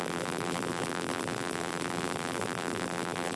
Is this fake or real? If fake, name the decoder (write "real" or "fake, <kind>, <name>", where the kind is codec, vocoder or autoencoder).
fake, vocoder, BigVGAN v2